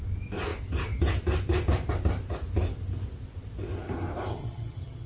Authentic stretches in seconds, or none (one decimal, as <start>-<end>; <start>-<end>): 0.0-4.3